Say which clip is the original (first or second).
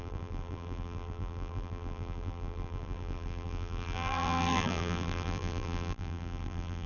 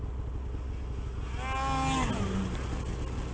second